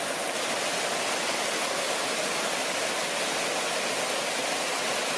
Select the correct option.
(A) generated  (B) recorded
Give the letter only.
B